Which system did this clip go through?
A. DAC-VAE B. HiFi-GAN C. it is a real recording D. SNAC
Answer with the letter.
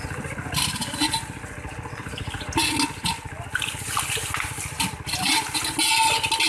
C